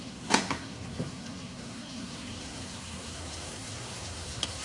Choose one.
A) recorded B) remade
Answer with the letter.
B